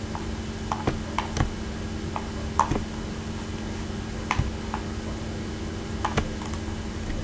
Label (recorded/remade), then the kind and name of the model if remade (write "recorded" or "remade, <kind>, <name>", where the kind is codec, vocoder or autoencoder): recorded